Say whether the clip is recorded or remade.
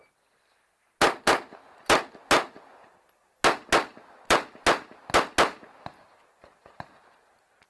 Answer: recorded